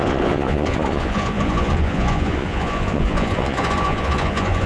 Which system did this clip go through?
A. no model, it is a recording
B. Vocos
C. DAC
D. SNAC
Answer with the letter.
B